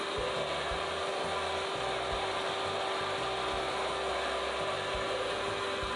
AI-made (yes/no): no